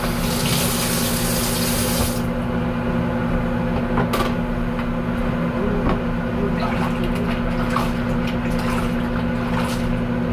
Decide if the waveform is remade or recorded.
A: recorded